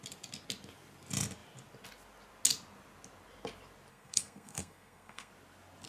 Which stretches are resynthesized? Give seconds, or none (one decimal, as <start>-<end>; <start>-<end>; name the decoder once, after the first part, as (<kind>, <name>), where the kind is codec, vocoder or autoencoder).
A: 3.9-5.3 (codec, SNAC)